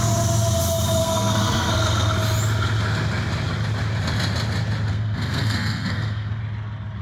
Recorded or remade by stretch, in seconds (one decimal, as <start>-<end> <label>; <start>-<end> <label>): 0.0-1.0 recorded; 1.0-2.1 remade; 2.1-4.9 recorded; 4.9-6.4 remade; 6.4-7.0 recorded